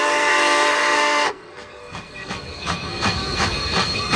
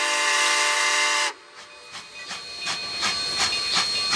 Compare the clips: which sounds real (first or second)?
second